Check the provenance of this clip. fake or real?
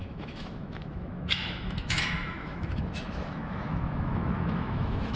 fake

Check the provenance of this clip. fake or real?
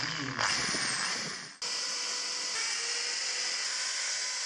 real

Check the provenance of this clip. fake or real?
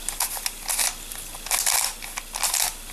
real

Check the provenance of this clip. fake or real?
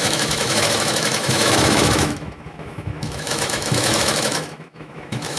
fake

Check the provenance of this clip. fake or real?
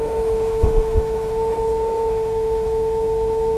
fake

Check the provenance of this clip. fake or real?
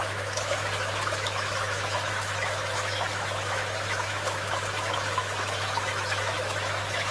fake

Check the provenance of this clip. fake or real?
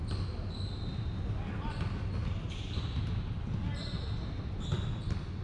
real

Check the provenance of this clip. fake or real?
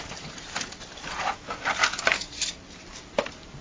real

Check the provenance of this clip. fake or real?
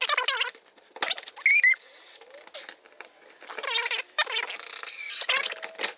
real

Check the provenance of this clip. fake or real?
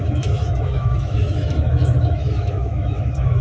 fake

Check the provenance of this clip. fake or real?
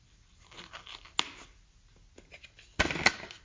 real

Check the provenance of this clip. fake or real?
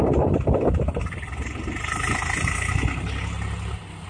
real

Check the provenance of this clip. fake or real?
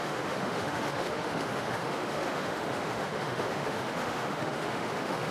fake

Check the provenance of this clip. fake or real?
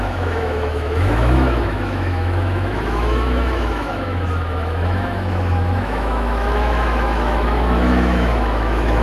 fake